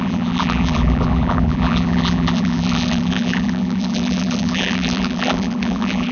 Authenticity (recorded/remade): remade